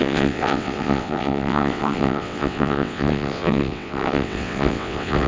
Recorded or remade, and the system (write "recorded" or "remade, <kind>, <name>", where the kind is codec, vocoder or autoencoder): remade, vocoder, WaveNeXt